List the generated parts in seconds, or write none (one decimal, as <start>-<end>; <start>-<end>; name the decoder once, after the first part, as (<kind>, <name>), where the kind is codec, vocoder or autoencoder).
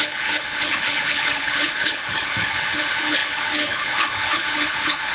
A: 0.0-5.1 (codec, HILCodec)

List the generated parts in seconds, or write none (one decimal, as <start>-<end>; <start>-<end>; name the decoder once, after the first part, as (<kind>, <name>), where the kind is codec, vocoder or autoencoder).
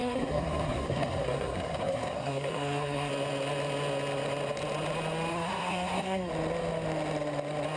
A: 0.0-3.1 (codec, SNAC); 5.3-6.3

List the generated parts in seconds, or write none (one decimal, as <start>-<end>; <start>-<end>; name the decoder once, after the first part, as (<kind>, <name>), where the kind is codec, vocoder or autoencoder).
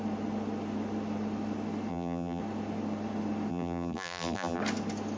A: 1.9-2.4 (vocoder, BigVGAN v2); 3.5-4.6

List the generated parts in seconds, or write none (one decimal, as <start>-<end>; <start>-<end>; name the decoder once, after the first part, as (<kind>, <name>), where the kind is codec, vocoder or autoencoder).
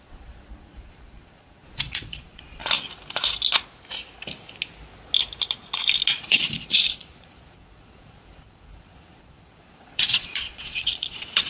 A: 0.0-2.6 (vocoder, Vocos); 6.3-11.5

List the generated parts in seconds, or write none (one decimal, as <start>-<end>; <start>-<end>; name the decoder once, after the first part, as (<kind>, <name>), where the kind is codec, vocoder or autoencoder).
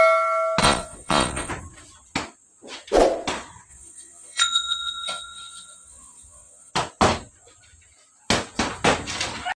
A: 0.6-1.5 (vocoder, Vocos); 3.7-6.7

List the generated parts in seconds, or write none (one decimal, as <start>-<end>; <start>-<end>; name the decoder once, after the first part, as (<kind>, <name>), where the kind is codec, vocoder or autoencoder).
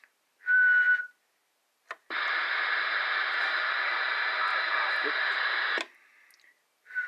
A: 2.0-3.0 (vocoder, BigVGAN v2); 4.5-5.4